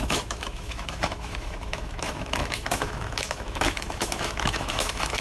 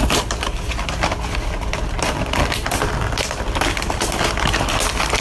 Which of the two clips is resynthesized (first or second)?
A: first